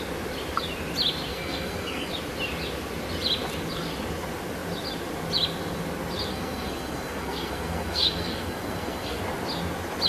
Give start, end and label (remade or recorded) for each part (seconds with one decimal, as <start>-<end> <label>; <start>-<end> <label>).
0.0-1.3 recorded; 1.3-2.1 remade; 2.1-6.3 recorded; 6.3-9.2 remade; 9.2-10.1 recorded